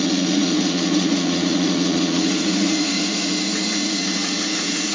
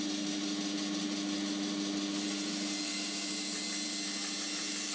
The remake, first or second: first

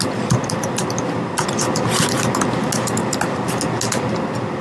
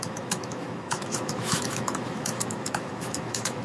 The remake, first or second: second